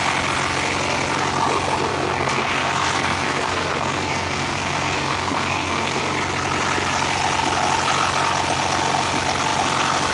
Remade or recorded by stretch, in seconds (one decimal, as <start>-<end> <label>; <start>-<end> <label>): 0.0-1.9 recorded; 1.9-6.0 remade; 6.0-10.1 recorded